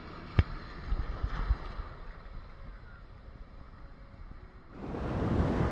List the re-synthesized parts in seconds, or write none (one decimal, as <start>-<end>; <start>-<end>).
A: none